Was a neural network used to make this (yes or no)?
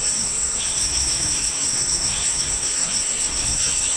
yes